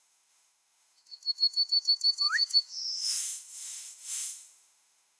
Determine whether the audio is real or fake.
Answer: fake